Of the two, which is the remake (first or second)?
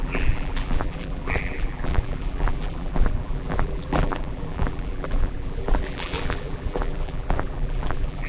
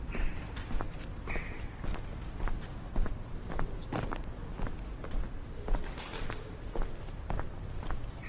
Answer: first